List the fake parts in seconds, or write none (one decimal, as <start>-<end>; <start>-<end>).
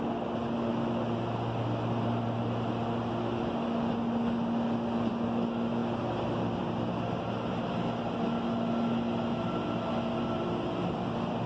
none